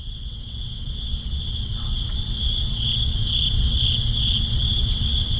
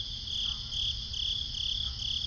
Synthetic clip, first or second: first